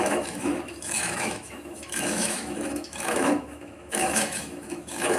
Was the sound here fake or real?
fake